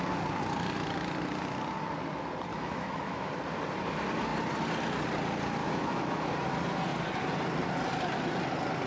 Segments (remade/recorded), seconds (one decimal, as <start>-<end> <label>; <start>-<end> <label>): 0.0-2.5 recorded; 2.5-3.3 remade; 3.3-5.6 recorded; 5.6-6.2 remade; 6.2-8.9 recorded